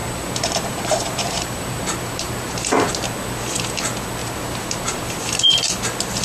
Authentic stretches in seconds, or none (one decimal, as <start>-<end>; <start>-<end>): 2.9-4.2; 5.6-6.2